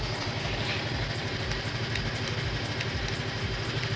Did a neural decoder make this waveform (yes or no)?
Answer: no